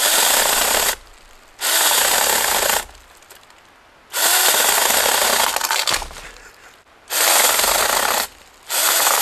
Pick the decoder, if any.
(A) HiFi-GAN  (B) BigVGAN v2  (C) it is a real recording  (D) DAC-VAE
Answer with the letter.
C